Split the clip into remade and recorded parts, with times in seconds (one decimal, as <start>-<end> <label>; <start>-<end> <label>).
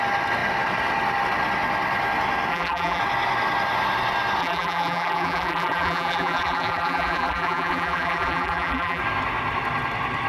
0.0-2.5 recorded; 2.5-3.0 remade; 3.0-4.4 recorded; 4.4-9.0 remade; 9.0-10.3 recorded